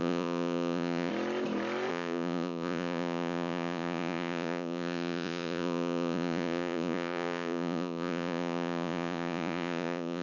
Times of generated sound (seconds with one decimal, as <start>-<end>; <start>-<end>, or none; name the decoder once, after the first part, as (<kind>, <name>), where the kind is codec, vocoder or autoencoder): 0.0-1.1 (vocoder, Vocos); 1.9-10.2